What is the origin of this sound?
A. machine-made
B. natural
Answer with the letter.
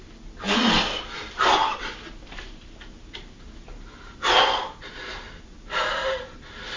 B